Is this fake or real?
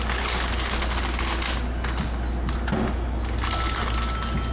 real